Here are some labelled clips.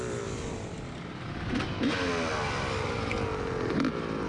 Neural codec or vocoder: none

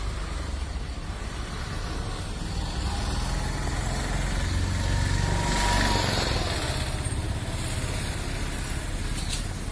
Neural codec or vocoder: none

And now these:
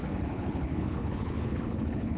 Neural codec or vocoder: codec, HILCodec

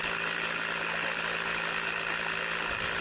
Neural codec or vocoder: none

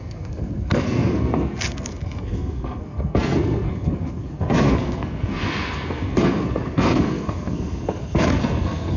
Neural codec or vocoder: codec, SNAC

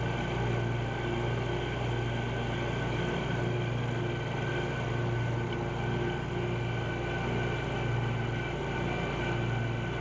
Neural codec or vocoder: none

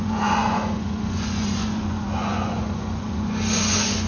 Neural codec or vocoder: vocoder, Vocos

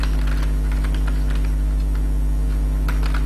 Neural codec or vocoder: none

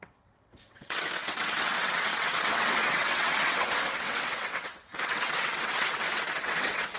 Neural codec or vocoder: vocoder, WaveNeXt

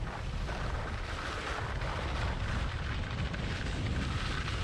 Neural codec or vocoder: none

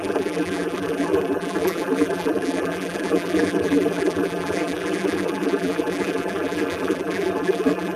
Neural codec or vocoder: vocoder, BigVGAN v2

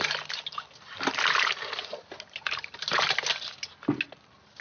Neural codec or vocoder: none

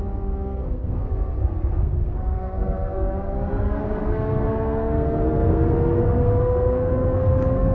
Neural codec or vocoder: codec, SNAC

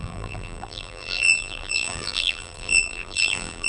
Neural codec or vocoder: vocoder, BigVGAN v2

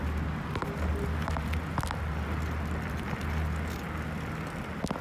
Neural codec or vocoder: none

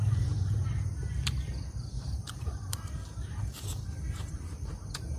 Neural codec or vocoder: vocoder, BigVGAN v2